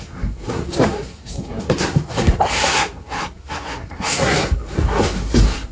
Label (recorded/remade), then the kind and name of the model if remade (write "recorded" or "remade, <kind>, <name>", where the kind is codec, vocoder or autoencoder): remade, codec, SNAC